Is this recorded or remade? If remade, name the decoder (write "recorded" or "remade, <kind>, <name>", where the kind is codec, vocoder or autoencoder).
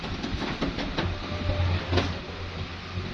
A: recorded